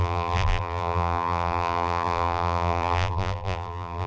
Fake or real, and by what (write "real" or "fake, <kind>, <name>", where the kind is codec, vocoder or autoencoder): fake, vocoder, BigVGAN v2